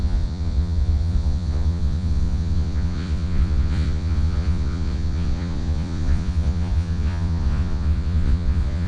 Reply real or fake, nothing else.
fake